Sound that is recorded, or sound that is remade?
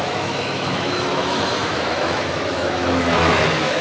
remade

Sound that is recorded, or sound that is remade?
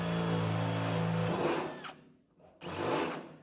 recorded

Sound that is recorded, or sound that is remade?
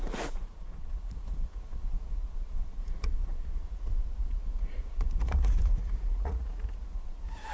remade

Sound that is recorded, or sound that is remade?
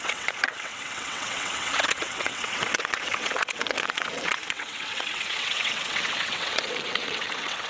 remade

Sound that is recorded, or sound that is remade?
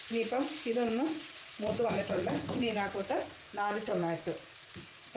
remade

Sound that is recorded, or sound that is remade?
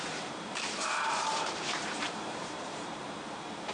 remade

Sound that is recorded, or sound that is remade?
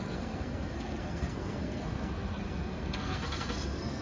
remade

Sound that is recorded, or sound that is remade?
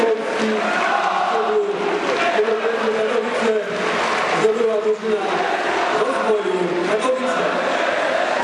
recorded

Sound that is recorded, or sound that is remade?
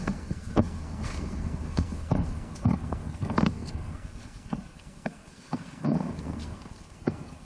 remade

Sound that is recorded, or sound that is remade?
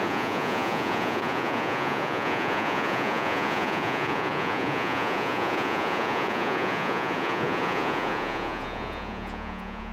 remade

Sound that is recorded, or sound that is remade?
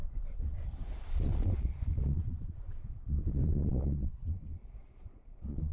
remade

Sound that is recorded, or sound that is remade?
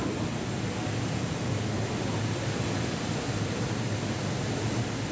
recorded